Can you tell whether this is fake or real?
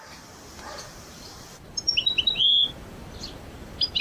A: fake